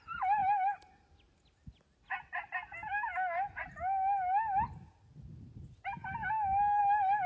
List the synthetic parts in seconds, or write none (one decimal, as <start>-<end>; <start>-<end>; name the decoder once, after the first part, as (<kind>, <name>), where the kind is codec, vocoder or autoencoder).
none